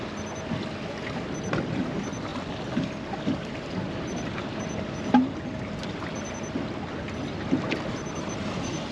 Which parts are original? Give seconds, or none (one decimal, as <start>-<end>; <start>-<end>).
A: 0.0-8.9